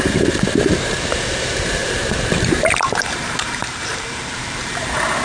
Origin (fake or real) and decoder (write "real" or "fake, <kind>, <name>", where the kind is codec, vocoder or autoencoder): fake, vocoder, BigVGAN v2